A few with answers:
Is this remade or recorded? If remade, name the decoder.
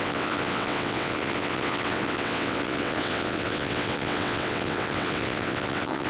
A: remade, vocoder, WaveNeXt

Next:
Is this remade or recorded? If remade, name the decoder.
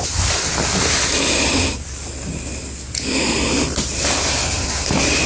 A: recorded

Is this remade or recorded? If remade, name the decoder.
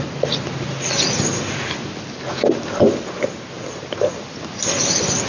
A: recorded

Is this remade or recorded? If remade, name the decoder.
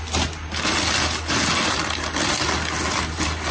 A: recorded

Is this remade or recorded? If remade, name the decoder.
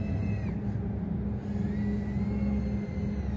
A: recorded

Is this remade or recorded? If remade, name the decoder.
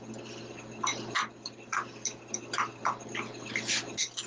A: recorded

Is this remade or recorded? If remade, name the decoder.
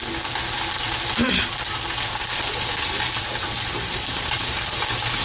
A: recorded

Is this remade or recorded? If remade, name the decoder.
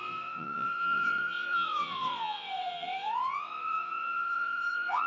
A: remade, vocoder, WaveNeXt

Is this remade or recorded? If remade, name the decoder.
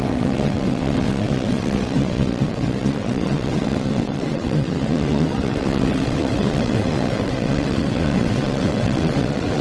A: remade, vocoder, WaveNeXt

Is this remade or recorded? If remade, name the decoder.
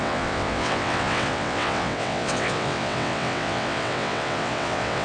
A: remade, vocoder, WaveNeXt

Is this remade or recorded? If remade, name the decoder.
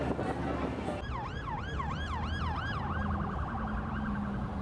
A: recorded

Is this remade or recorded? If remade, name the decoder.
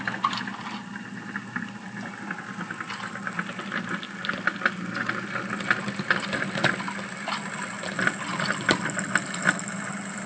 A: recorded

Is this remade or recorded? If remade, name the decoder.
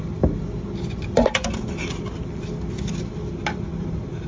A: recorded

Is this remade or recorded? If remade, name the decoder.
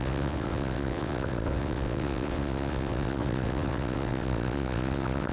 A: remade, vocoder, WaveNeXt